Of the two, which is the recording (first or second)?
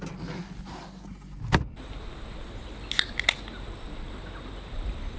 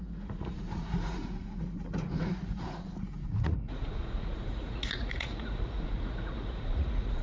first